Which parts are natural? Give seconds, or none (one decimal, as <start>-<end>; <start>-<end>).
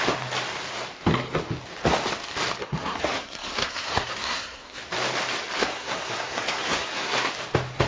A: 0.0-2.6; 4.8-5.6; 7.3-7.9